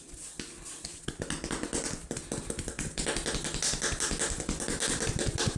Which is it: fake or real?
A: real